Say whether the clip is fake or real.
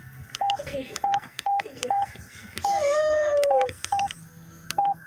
fake